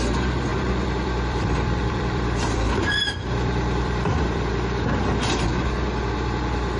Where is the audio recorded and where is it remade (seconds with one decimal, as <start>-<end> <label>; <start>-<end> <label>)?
0.0-0.5 recorded; 0.5-4.5 remade; 4.5-6.8 recorded